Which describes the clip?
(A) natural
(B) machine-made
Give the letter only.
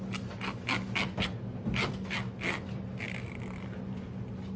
A